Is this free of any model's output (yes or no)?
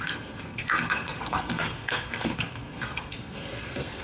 no